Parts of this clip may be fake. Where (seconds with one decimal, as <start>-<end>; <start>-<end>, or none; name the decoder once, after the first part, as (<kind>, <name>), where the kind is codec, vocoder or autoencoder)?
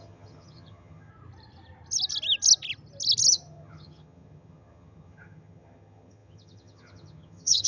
0.0-1.1 (vocoder, HiFi-GAN); 3.3-7.7